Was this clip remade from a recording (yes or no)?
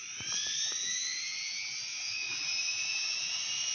yes